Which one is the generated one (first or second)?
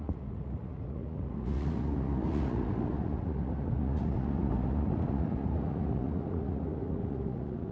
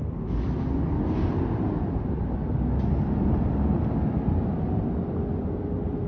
first